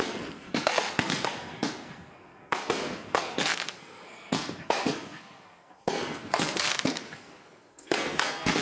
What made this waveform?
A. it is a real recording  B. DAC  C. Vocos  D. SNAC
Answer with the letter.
D